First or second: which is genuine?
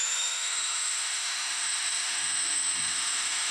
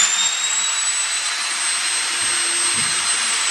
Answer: second